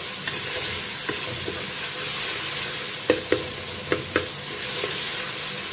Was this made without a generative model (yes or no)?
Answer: yes